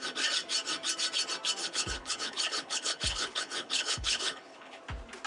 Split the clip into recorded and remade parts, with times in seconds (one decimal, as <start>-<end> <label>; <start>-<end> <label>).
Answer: 0.0-1.6 recorded; 1.6-4.8 remade; 4.8-5.3 recorded